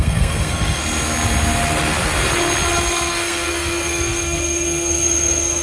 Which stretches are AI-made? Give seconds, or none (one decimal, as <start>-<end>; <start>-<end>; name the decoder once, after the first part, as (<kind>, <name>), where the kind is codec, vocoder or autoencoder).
0.0-0.8 (codec, SNAC); 2.9-5.6